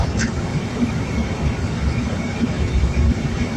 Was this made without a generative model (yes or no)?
no